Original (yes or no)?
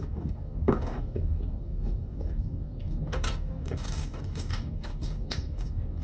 no